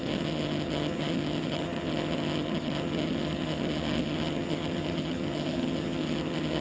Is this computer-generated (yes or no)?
yes